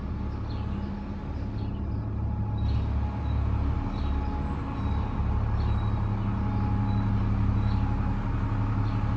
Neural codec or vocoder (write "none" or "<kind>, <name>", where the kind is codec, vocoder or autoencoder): none